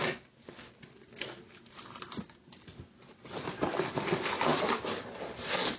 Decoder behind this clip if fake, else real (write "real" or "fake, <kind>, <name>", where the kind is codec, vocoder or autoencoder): real